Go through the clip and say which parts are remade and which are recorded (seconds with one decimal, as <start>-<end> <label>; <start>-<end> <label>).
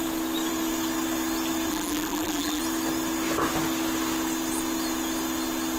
0.0-1.7 recorded; 1.7-2.6 remade; 2.6-5.8 recorded